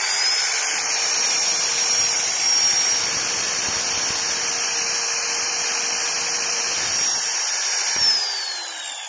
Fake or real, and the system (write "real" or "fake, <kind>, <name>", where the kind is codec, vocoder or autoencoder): fake, vocoder, BigVGAN v2